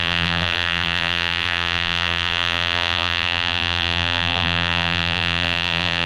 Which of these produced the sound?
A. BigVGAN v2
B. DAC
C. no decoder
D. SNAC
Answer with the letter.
A